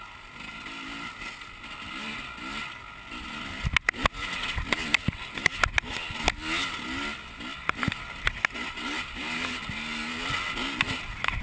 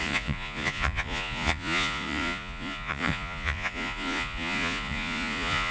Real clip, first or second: first